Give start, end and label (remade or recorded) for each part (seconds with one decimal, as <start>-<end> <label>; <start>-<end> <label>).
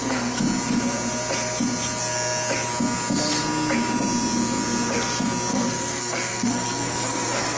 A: 0.0-5.5 recorded; 5.5-7.6 remade